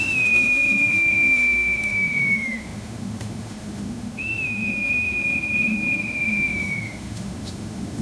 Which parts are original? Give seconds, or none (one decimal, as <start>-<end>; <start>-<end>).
none